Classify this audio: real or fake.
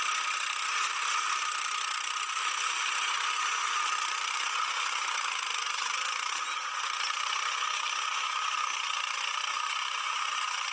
real